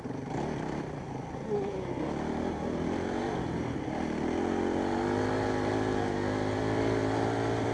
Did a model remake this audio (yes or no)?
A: no